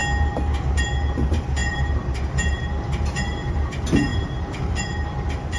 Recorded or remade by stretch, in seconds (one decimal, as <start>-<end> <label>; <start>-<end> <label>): 0.0-0.8 recorded; 0.8-5.6 remade